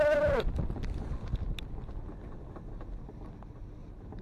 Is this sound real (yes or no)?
yes